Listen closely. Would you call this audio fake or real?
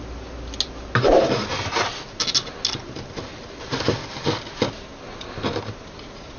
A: real